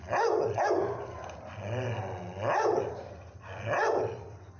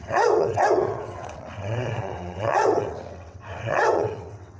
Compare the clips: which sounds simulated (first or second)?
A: second